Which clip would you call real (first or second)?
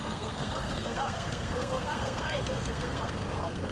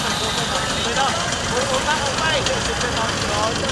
second